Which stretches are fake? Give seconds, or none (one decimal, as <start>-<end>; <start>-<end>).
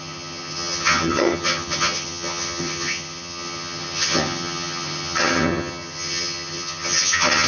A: 0.0-7.5